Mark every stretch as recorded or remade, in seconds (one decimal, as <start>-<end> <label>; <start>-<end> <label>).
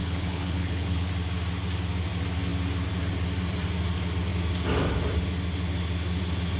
0.0-1.1 remade; 1.1-6.6 recorded